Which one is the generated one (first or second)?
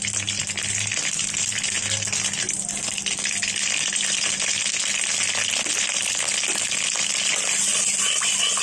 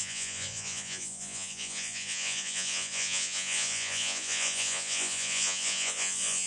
second